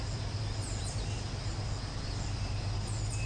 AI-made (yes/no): no